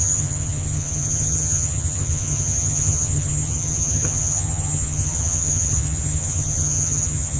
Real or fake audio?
fake